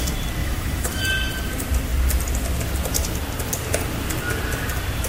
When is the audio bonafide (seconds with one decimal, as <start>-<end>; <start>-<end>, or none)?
0.0-0.4; 1.0-5.1